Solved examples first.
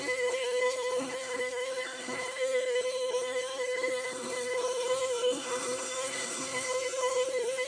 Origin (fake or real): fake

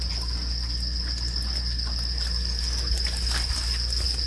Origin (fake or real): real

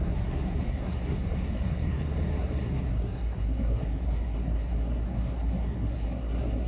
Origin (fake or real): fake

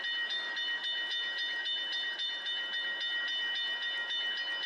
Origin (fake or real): real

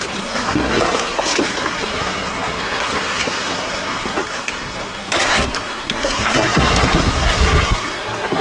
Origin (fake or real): fake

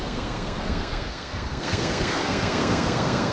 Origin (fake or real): fake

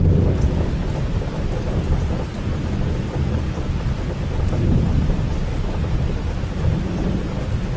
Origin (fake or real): real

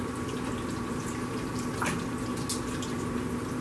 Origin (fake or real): real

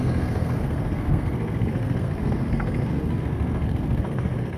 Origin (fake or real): fake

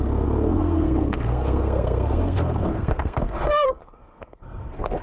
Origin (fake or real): fake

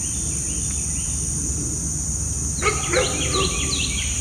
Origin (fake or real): real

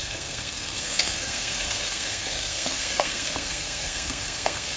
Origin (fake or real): fake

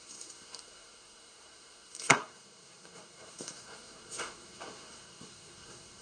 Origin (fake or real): fake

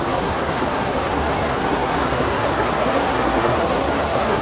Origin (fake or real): fake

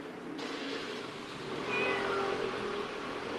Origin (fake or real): real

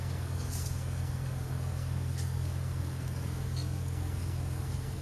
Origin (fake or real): fake